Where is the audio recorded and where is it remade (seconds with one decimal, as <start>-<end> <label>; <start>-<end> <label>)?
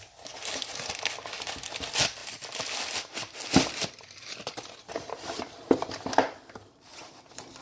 0.0-7.6 recorded